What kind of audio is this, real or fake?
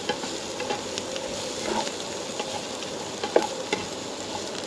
real